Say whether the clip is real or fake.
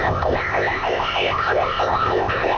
fake